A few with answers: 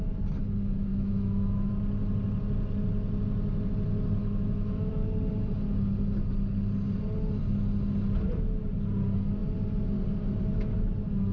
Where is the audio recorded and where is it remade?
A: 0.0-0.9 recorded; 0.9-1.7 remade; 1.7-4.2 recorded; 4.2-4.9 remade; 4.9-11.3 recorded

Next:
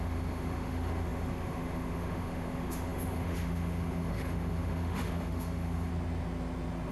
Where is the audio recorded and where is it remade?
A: 0.0-5.9 remade; 5.9-6.9 recorded

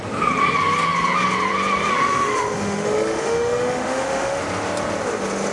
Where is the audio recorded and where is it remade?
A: 0.0-1.9 recorded; 1.9-4.4 remade; 4.4-5.5 recorded

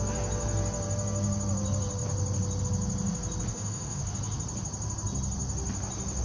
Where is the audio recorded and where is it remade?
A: 0.0-3.5 recorded; 3.5-4.0 remade; 4.0-6.2 recorded

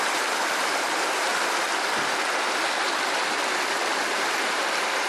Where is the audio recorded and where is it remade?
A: 0.0-5.1 recorded

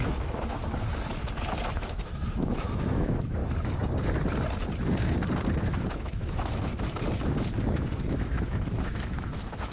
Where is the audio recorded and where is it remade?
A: 0.0-0.6 remade; 0.6-1.7 recorded; 1.7-3.4 remade; 3.4-5.6 recorded; 5.6-6.7 remade; 6.7-8.1 recorded; 8.1-9.7 remade

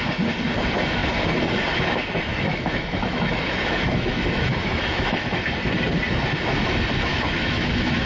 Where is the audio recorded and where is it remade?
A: 0.0-2.3 recorded; 2.3-5.5 remade; 5.5-7.1 recorded; 7.1-8.1 remade

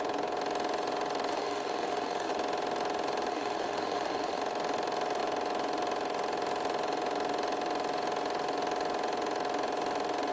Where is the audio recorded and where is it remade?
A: 0.0-1.3 recorded; 1.3-2.3 remade; 2.3-3.3 recorded; 3.3-4.4 remade; 4.4-10.3 recorded